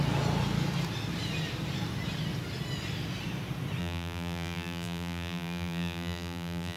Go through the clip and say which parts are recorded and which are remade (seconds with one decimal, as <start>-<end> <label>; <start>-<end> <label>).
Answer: 0.0-3.8 recorded; 3.8-6.8 remade